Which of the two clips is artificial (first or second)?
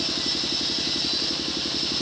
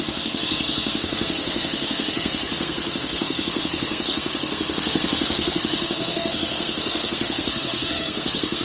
second